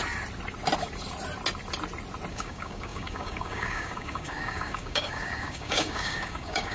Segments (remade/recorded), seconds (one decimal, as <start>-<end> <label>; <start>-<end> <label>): 0.0-2.3 recorded; 2.3-6.7 remade